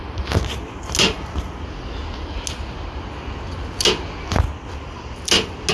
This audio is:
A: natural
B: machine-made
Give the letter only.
A